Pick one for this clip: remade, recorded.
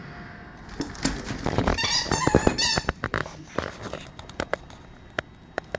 recorded